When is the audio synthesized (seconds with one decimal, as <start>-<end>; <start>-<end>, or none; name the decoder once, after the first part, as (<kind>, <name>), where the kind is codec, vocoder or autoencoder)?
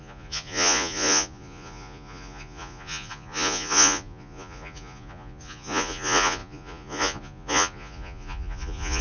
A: 0.0-9.0 (vocoder, Vocos)